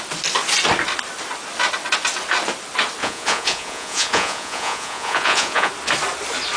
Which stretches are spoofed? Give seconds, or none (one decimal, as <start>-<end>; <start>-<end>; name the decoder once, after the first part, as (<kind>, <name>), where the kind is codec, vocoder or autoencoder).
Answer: 3.0-5.7 (vocoder, Vocos)